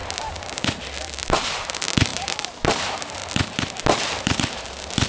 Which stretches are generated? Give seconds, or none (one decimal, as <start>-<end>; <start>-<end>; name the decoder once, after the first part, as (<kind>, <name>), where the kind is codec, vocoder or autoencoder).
1.0-3.2 (vocoder, BigVGAN v2); 4.2-5.1